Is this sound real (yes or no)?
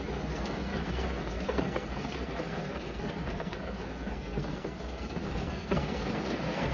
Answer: no